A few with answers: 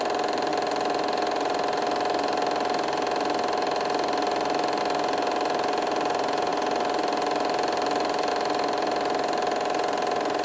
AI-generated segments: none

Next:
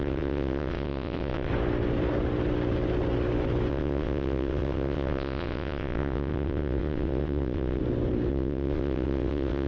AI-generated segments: 0.0-1.5 (vocoder, WaveNeXt); 3.7-7.8; 8.3-9.7

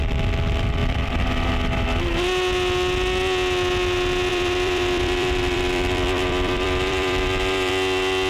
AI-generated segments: 0.8-1.5 (vocoder, BigVGAN v2); 4.3-7.7

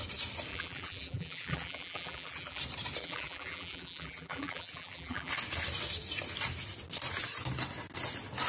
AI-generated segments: 0.5-2.6 (vocoder, BigVGAN v2); 3.0-5.3

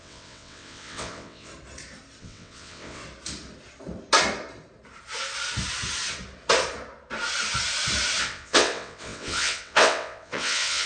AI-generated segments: 0.0-1.5 (vocoder, WaveNeXt); 2.2-3.0; 8.2-10.9

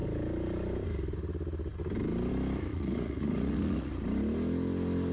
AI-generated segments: 2.7-3.9 (vocoder, Vocos)